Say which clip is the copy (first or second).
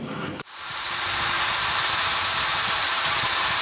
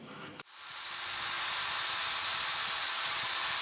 first